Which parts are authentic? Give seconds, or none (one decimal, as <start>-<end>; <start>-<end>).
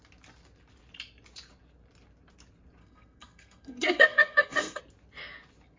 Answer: 0.0-2.8; 4.8-5.8